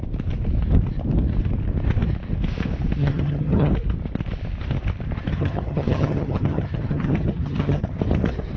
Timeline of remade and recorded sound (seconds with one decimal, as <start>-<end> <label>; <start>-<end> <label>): 0.0-3.0 recorded; 3.0-3.7 remade; 3.7-5.3 recorded; 5.3-7.8 remade; 7.8-8.6 recorded